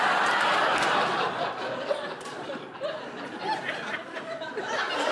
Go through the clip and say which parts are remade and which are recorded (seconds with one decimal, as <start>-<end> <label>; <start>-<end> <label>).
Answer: 0.0-5.1 recorded